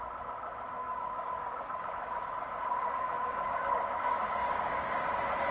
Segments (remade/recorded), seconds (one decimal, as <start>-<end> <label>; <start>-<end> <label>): 0.0-0.8 recorded; 0.8-2.2 remade; 2.2-2.7 recorded; 2.7-3.7 remade; 3.7-4.4 recorded; 4.4-5.1 remade; 5.1-5.5 recorded

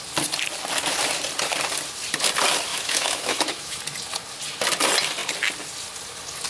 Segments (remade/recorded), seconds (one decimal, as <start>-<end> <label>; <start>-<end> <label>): 0.0-2.7 recorded; 2.7-3.8 remade; 3.8-6.5 recorded

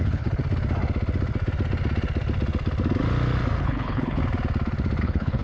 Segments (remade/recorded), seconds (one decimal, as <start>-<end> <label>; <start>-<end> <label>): 0.0-0.4 remade; 0.4-3.6 recorded; 3.6-4.2 remade; 4.2-5.0 recorded; 5.0-5.4 remade

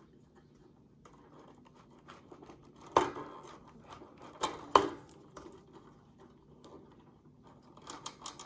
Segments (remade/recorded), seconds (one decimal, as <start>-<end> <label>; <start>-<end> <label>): 0.0-8.5 recorded

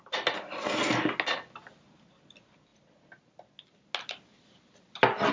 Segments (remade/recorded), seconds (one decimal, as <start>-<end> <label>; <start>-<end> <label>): 0.0-5.3 recorded

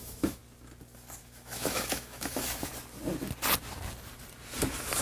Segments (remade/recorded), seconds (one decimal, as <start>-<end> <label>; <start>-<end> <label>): 0.0-0.4 remade; 0.4-1.2 recorded; 1.2-2.7 remade; 2.7-5.0 recorded